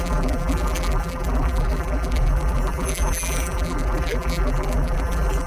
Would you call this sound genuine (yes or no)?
no